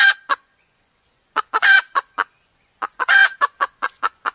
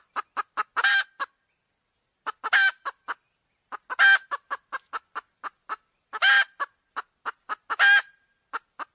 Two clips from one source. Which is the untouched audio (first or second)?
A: second